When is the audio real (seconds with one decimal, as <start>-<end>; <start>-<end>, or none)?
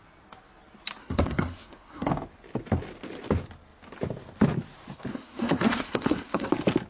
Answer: 0.0-1.0; 2.1-5.1; 6.5-6.9